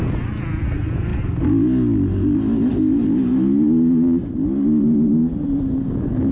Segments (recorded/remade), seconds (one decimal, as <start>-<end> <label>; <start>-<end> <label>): 0.0-6.3 recorded